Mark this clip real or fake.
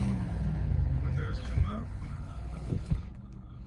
fake